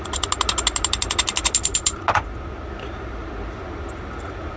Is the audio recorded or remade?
recorded